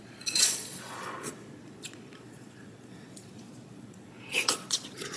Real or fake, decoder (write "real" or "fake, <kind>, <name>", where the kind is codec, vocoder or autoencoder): fake, vocoder, Vocos